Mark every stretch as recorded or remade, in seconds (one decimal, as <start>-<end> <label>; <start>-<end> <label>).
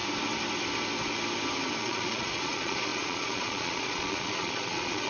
0.0-1.8 recorded; 1.8-5.1 remade